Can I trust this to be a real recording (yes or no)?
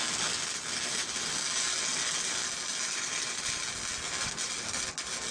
yes